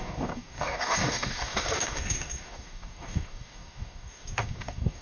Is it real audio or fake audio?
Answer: fake